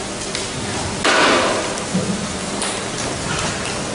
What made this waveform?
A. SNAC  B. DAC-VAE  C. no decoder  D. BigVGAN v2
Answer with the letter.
C